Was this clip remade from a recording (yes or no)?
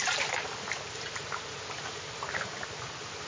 no